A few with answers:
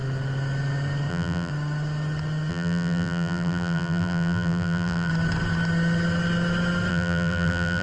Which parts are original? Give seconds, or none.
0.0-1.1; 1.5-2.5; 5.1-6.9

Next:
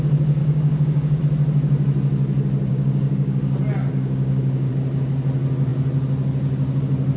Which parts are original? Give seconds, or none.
0.0-0.4; 1.2-2.7; 3.4-3.9; 4.7-7.2